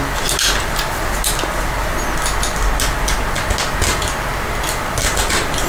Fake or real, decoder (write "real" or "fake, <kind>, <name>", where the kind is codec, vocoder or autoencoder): real